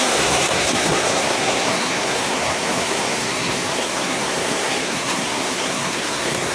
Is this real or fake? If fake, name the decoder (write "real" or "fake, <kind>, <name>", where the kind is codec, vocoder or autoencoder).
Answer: fake, codec, SNAC